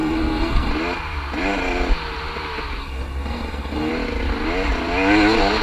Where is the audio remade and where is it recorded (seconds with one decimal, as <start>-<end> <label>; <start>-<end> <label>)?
0.0-0.7 remade; 0.7-2.8 recorded; 2.8-3.9 remade; 3.9-5.6 recorded